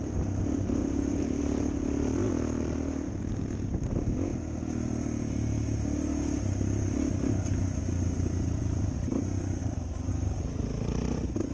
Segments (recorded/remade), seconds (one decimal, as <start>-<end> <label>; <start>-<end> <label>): 0.0-0.8 recorded; 0.8-1.4 remade; 1.4-9.6 recorded; 9.6-10.1 remade; 10.1-11.5 recorded

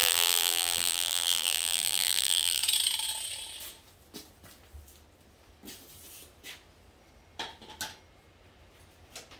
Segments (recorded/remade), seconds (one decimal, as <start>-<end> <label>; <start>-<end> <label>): 0.0-2.6 remade; 2.6-9.4 recorded

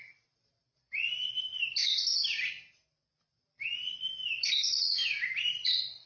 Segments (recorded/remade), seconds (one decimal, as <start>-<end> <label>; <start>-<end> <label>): 0.0-6.1 remade